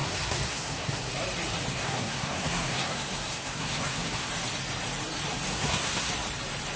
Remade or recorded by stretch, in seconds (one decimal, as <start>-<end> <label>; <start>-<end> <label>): 0.0-1.1 remade; 1.1-1.7 recorded; 1.7-4.3 remade; 4.3-5.5 recorded; 5.5-6.1 remade; 6.1-6.8 recorded